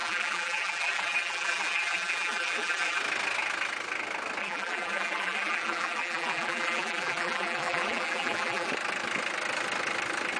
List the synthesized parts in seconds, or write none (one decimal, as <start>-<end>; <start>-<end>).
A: 0.0-3.0; 4.4-8.7